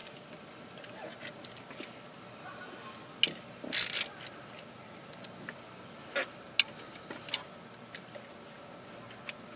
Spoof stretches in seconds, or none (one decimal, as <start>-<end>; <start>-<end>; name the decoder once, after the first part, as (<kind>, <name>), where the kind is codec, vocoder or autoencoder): none